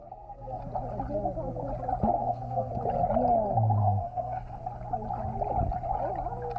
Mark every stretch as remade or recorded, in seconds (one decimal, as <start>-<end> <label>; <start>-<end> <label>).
0.0-0.6 remade; 0.6-2.2 recorded; 2.2-2.7 remade; 2.7-3.8 recorded; 3.8-4.6 remade; 4.6-6.6 recorded

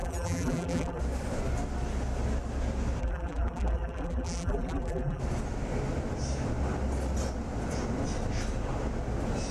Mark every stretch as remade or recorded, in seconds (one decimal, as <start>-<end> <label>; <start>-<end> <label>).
0.0-1.0 remade; 1.0-3.0 recorded; 3.0-5.2 remade; 5.2-9.5 recorded

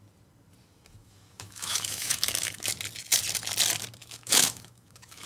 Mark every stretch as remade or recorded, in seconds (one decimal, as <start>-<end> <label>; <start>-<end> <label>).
0.0-0.7 recorded; 0.7-2.7 remade; 2.7-4.0 recorded; 4.0-5.3 remade

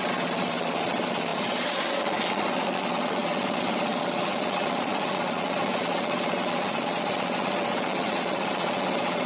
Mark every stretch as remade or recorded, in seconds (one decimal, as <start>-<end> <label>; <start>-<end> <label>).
0.0-9.3 remade

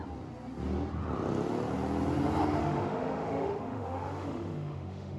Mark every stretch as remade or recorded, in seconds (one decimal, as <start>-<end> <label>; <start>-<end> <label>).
0.0-2.6 recorded; 2.6-5.2 remade

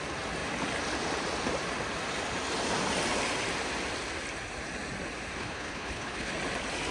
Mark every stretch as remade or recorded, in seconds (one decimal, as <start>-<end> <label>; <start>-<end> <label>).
0.0-5.4 recorded; 5.4-6.3 remade; 6.3-6.9 recorded